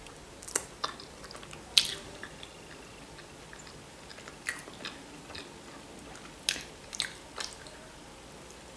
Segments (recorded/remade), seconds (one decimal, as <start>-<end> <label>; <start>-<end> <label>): 0.0-8.8 recorded

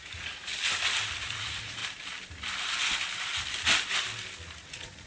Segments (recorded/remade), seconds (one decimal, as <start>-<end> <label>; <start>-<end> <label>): 0.0-0.5 remade; 0.5-1.2 recorded; 1.2-1.8 remade; 1.8-4.4 recorded; 4.4-5.1 remade

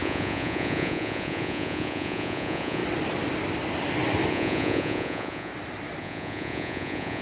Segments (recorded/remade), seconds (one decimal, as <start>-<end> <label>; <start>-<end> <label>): 0.0-2.8 remade; 2.8-4.3 recorded; 4.3-5.5 remade; 5.5-6.0 recorded; 6.0-7.2 remade

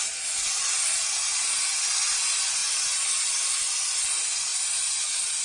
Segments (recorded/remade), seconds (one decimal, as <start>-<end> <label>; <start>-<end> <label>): 0.0-5.4 recorded

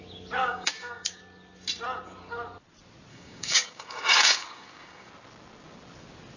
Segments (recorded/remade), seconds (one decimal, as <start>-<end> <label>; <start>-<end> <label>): 0.0-0.4 recorded; 0.4-1.2 remade; 1.2-3.1 recorded; 3.1-5.1 remade; 5.1-6.4 recorded